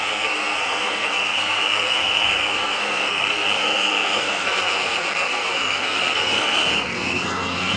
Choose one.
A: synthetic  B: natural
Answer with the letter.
A